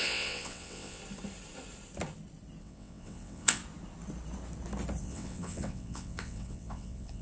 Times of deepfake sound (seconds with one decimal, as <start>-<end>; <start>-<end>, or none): 0.0-1.0; 2.6-3.6; 5.0-7.2